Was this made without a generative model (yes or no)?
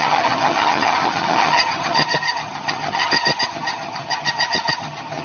no